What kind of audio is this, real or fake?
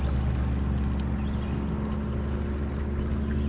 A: real